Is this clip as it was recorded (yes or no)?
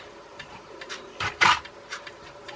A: no